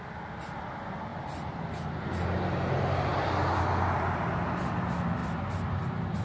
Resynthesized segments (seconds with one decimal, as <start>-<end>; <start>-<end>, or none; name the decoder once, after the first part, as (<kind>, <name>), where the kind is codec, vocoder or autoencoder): none